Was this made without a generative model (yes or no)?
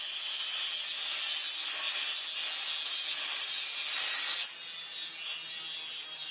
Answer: yes